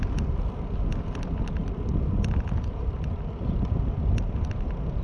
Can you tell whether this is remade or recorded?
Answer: recorded